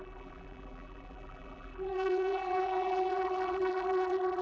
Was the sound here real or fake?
fake